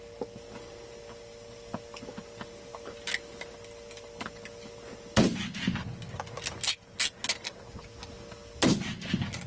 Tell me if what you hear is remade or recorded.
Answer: recorded